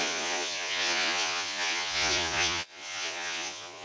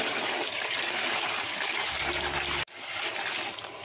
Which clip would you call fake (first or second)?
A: first